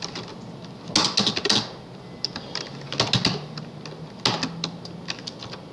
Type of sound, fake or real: real